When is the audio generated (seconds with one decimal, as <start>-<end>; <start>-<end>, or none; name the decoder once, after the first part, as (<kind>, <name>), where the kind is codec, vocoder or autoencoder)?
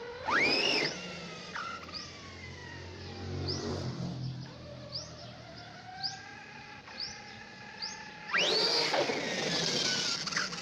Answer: none